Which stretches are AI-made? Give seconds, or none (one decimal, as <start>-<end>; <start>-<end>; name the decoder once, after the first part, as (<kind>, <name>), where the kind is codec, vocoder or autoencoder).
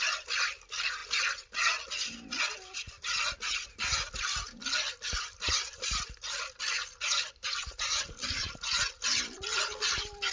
4.6-8.0 (vocoder, BigVGAN v2)